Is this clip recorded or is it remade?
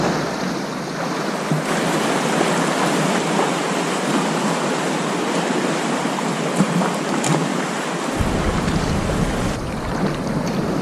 recorded